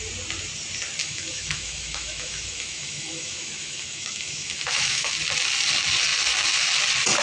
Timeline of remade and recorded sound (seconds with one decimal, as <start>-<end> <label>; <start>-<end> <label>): 0.0-1.0 recorded; 1.0-5.1 remade; 5.1-7.2 recorded